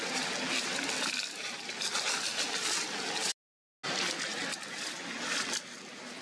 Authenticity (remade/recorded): recorded